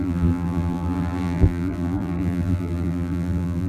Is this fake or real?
fake